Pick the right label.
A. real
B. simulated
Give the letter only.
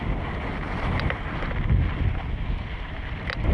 A